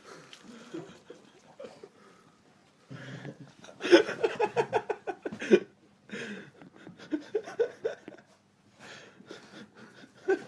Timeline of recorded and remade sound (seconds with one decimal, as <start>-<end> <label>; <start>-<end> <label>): 0.0-2.6 recorded; 2.6-4.4 remade; 4.4-10.5 recorded